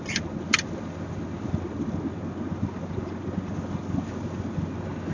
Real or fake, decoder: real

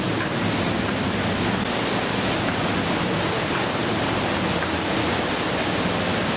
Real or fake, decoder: real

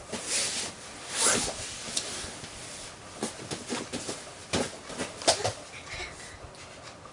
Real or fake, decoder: real